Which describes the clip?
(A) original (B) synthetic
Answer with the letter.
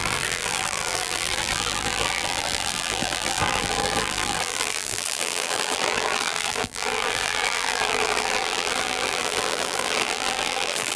B